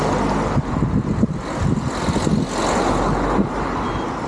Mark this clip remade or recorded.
recorded